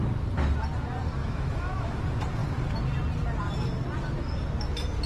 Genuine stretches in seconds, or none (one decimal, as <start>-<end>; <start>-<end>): 0.0-1.2; 2.0-5.1